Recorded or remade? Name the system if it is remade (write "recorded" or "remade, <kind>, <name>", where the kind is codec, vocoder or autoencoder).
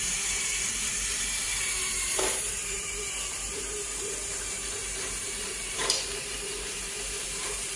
remade, vocoder, BigVGAN v2